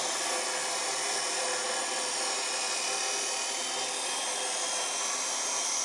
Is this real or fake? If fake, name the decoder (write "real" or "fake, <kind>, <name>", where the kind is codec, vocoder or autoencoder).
real